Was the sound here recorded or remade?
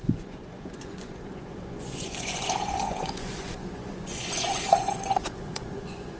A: remade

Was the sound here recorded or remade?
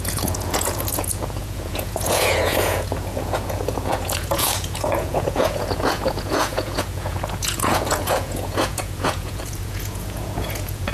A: remade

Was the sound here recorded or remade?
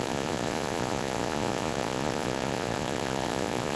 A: remade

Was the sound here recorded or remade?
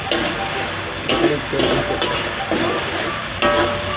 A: recorded